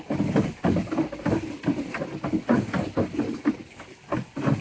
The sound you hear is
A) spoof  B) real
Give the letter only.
B